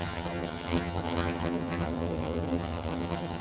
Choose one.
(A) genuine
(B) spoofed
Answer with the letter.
B